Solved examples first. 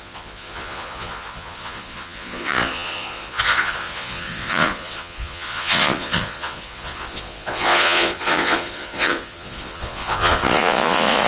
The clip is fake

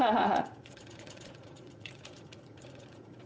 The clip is fake